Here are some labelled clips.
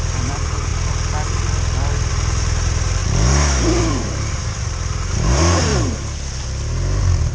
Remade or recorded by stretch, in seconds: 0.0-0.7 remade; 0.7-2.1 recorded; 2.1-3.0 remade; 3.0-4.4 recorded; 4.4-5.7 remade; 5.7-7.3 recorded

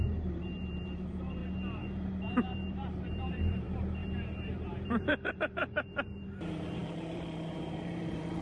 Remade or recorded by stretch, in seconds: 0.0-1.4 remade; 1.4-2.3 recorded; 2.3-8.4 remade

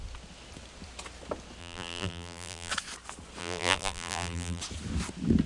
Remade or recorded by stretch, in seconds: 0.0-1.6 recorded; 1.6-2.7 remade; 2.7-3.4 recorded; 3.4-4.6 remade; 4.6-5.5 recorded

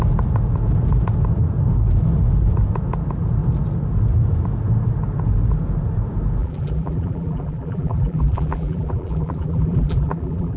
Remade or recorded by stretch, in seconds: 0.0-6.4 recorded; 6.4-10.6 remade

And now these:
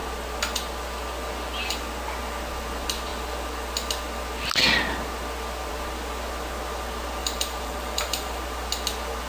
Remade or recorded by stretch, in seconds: 0.0-7.2 recorded; 7.2-8.4 remade; 8.4-9.3 recorded

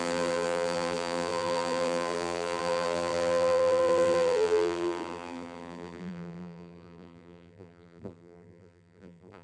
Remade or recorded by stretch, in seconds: 0.0-9.4 remade

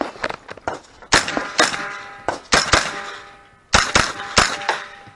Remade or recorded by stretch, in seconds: 0.0-5.2 recorded